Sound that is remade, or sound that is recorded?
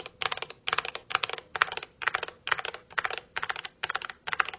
recorded